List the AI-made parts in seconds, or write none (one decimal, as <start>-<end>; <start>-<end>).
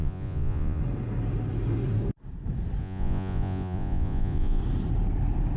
0.0-0.8; 2.8-4.6